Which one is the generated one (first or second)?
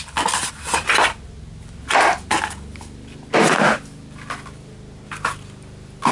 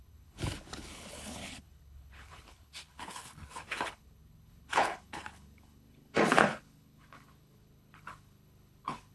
second